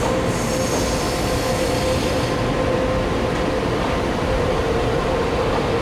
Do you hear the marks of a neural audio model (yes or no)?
no